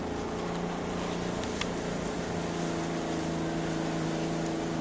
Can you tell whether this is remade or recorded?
recorded